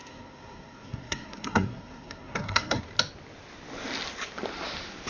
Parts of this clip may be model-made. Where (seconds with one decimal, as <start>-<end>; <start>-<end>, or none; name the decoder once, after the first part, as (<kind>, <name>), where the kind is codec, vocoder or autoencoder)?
0.0-2.8 (codec, SNAC)